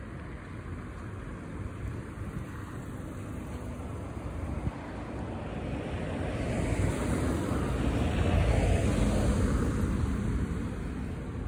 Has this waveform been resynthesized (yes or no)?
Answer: no